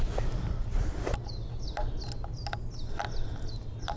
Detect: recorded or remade recorded